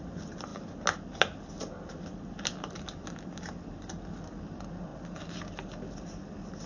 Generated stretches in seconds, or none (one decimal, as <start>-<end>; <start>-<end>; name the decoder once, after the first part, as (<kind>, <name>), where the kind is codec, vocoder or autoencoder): none